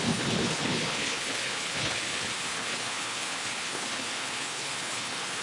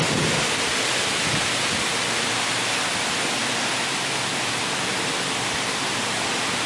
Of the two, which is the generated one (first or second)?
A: first